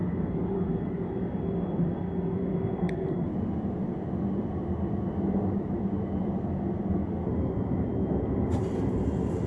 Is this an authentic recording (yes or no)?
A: no